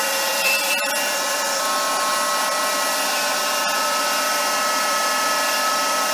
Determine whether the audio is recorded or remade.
recorded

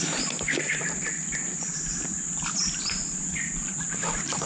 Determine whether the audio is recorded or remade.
remade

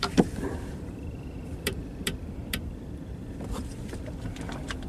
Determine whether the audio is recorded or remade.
remade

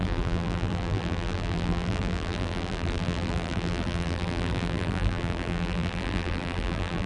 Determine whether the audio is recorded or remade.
remade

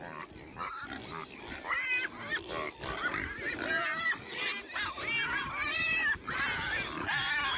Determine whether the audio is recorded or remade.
recorded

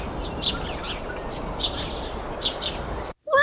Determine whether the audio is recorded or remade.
recorded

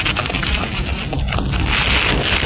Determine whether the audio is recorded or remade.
recorded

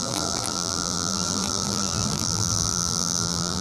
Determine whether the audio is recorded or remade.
remade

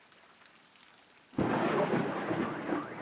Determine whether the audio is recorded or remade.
recorded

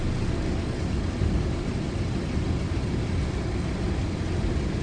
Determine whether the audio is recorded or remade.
recorded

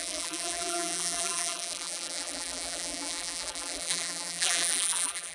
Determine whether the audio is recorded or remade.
remade